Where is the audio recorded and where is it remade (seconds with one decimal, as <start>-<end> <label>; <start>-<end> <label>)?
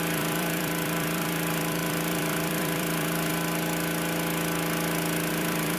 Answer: 0.0-3.3 remade; 3.3-5.3 recorded; 5.3-5.8 remade